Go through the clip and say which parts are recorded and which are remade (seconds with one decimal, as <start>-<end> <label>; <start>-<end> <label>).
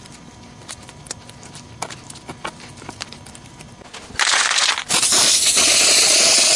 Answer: 0.0-6.6 recorded